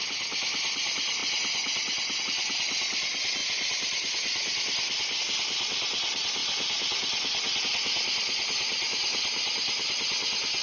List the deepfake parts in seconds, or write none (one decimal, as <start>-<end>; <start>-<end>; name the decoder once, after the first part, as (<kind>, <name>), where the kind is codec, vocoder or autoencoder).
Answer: none